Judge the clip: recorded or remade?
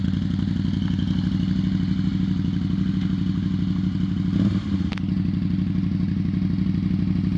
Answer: recorded